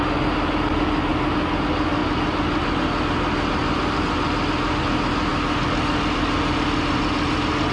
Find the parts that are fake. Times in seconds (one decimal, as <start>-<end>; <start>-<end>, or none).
none

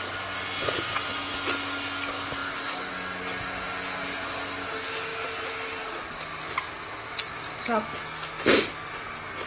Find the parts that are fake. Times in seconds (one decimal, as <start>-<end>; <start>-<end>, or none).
none

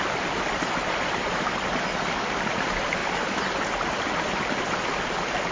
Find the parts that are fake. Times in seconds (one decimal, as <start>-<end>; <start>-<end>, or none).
none

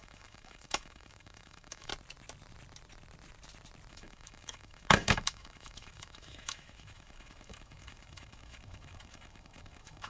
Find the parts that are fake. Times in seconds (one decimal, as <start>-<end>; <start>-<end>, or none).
0.0-1.9; 3.9-10.1

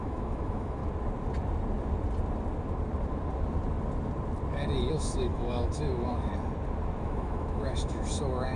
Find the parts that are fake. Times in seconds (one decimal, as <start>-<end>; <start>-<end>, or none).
0.0-0.8; 4.9-6.3; 7.0-8.6

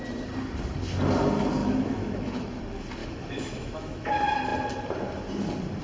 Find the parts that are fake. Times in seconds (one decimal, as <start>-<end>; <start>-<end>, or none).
1.6-2.6; 3.0-4.1

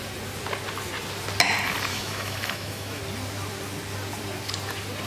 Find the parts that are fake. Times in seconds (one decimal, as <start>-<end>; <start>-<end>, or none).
1.9-3.0

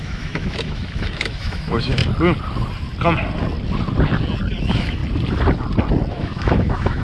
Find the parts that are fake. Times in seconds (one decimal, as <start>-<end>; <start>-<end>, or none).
0.0-2.0; 4.6-5.0; 6.1-7.0